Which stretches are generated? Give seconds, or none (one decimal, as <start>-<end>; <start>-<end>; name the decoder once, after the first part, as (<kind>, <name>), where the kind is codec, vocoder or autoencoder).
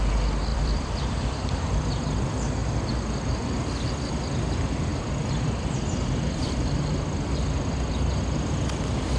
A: 0.5-1.8 (vocoder, BigVGAN v2); 4.9-8.2